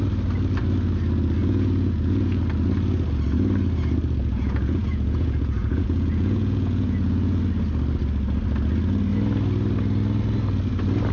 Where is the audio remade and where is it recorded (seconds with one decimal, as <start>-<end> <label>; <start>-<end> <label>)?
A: 0.0-1.4 recorded; 1.4-2.4 remade; 2.4-4.2 recorded; 4.2-7.4 remade; 7.4-11.1 recorded